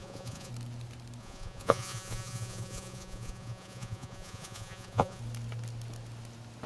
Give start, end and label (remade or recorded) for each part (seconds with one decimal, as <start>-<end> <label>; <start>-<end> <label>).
0.0-0.5 remade; 0.5-1.2 recorded; 1.2-5.2 remade; 5.2-6.7 recorded